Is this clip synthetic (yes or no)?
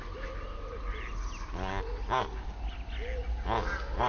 no